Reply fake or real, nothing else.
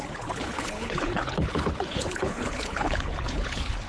fake